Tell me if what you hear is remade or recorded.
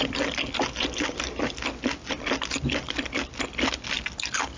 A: recorded